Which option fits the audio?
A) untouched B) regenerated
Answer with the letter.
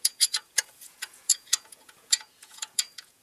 B